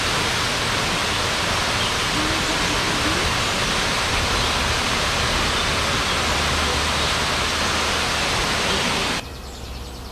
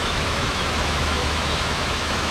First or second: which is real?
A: first